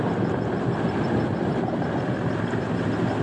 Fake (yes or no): no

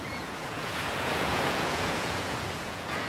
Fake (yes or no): yes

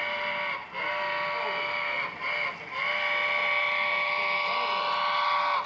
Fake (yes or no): no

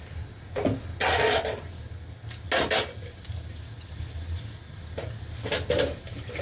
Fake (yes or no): no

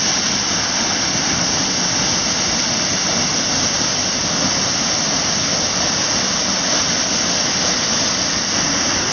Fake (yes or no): no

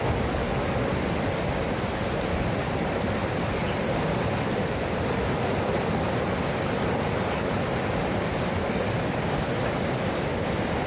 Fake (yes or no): no